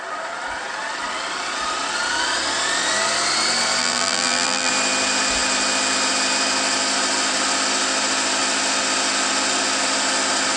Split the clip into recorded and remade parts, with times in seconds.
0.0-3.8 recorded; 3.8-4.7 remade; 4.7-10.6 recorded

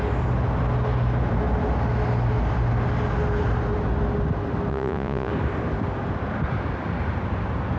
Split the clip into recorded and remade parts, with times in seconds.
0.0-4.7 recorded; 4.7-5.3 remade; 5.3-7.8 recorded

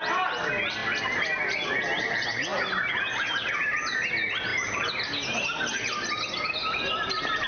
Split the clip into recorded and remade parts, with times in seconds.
0.0-7.5 recorded